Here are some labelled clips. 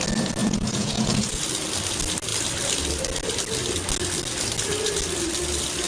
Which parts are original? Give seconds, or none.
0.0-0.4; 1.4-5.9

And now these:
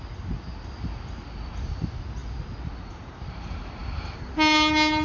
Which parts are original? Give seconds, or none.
0.0-5.0

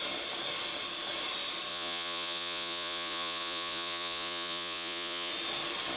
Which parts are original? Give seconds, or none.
0.0-1.7; 5.3-6.0